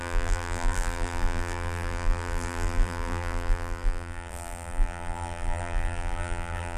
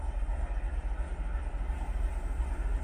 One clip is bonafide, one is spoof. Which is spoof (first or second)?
first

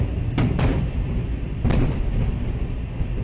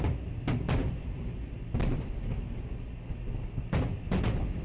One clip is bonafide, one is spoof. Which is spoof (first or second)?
first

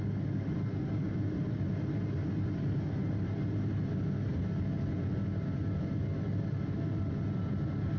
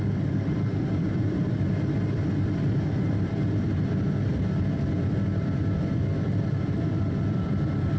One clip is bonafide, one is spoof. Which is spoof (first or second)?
second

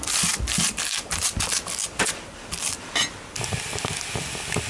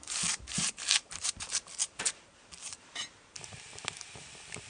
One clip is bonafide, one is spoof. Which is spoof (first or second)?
second